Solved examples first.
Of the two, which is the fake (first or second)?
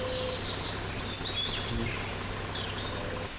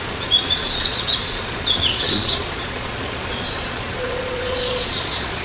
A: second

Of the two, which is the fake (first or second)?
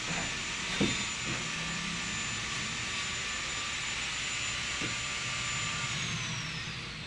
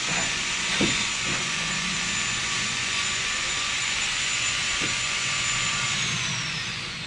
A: second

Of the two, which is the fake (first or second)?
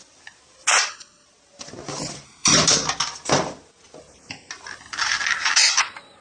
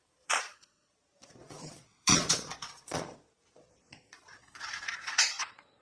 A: second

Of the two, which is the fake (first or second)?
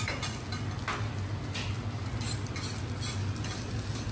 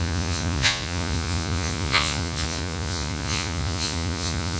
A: second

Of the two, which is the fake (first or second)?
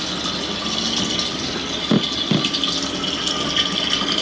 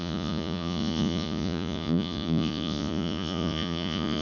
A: second